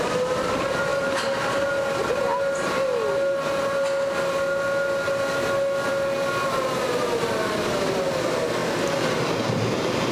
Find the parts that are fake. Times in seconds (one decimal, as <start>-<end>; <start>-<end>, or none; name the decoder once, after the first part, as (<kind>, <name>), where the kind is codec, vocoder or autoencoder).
none